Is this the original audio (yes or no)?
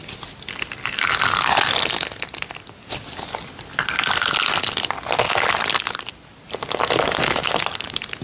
yes